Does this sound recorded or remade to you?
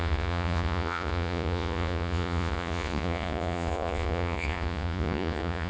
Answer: remade